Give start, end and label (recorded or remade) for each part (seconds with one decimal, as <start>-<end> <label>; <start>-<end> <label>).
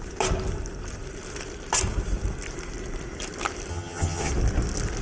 0.0-3.7 recorded; 3.7-4.3 remade; 4.3-5.0 recorded